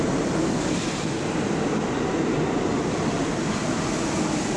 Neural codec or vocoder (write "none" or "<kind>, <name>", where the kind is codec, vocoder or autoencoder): none